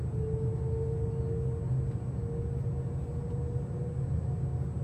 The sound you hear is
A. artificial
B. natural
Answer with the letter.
B